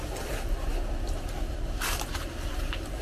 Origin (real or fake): real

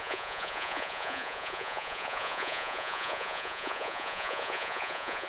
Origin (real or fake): fake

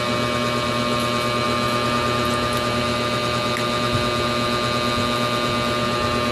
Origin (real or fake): real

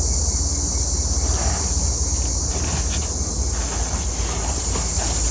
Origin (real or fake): real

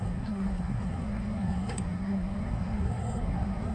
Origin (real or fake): fake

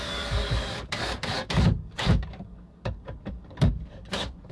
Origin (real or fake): fake